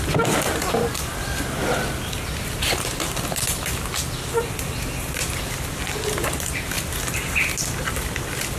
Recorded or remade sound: recorded